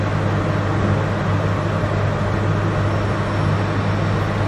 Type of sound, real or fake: real